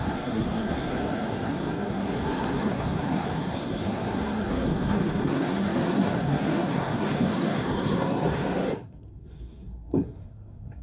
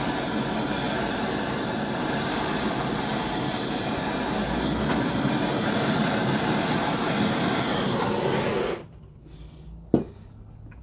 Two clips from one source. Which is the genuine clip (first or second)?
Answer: second